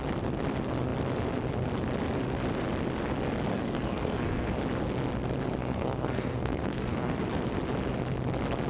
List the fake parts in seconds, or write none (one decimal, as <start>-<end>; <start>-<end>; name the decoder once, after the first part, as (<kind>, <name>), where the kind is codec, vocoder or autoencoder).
3.5-4.6 (codec, SNAC); 5.6-7.2